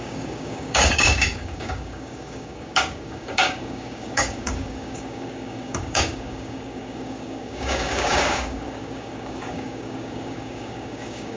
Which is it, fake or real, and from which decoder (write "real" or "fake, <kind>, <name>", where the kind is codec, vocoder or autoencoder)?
fake, codec, DAC